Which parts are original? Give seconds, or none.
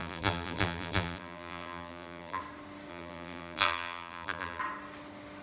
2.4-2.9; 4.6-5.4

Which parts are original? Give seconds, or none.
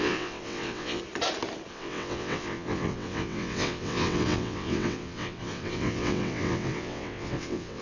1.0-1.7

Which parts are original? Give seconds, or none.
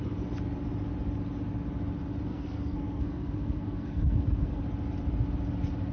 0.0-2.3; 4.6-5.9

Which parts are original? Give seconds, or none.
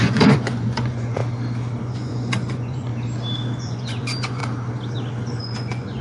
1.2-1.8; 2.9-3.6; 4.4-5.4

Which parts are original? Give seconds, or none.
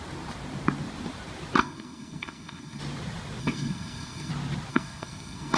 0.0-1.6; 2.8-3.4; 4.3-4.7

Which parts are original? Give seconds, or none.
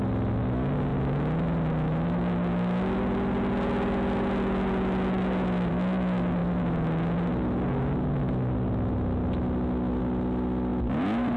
0.0-11.4